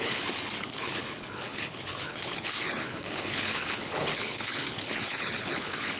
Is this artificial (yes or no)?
yes